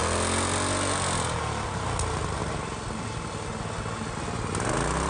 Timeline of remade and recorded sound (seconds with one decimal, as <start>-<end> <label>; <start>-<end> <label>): 0.0-5.1 recorded